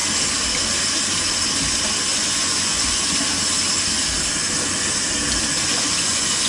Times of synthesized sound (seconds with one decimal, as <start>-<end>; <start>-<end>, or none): 2.1-3.2; 5.7-6.5